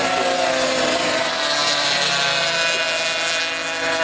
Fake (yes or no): no